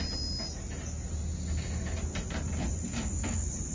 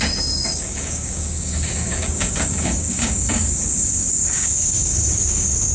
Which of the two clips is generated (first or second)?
second